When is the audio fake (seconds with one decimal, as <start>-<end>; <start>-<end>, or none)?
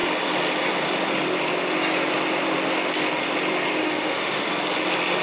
3.8-4.5